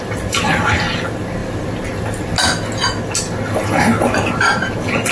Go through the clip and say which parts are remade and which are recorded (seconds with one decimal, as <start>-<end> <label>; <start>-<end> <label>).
0.0-5.1 recorded